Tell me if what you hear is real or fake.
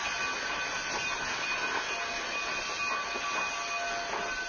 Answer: real